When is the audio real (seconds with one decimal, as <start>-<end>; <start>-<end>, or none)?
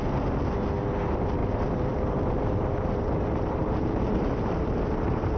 0.0-1.4; 4.6-5.4